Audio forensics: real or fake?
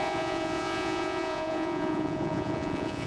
fake